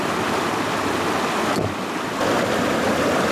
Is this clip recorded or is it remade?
recorded